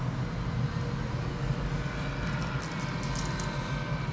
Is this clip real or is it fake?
real